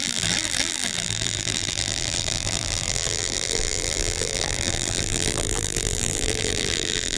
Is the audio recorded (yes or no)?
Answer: no